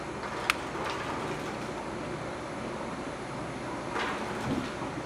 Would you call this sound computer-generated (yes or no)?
no